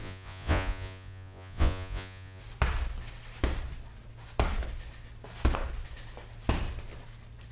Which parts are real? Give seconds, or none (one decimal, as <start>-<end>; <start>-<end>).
2.4-7.5